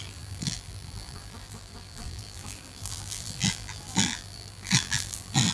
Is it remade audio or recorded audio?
remade